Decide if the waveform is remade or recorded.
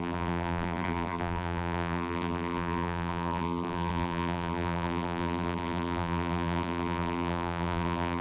remade